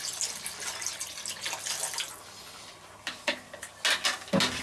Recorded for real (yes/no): yes